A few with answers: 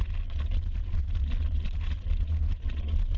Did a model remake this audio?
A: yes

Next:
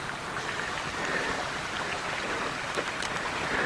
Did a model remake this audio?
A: no